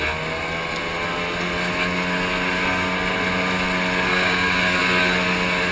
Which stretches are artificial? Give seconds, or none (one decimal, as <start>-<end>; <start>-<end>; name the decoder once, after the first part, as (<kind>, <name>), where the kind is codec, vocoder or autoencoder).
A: 4.1-4.8 (codec, DAC)